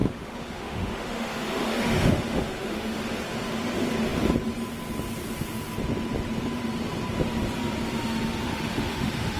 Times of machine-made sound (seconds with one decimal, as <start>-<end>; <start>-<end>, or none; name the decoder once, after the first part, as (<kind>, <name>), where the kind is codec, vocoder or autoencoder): 0.0-3.2 (autoencoder, DAC-VAE); 8.4-9.4